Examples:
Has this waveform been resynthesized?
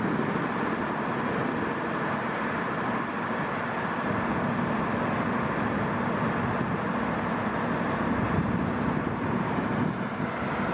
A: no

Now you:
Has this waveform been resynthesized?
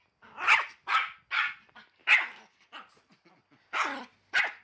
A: no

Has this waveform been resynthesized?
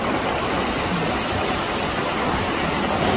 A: no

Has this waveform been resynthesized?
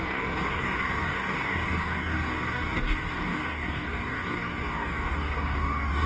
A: yes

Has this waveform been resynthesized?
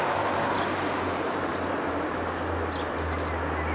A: no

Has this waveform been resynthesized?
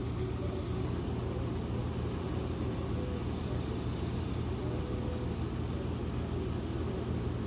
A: no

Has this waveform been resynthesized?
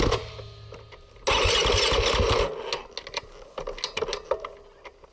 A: no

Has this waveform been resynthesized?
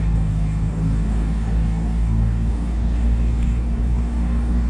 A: yes